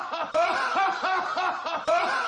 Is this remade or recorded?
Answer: remade